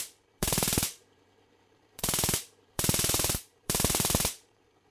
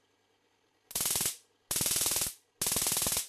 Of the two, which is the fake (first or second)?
first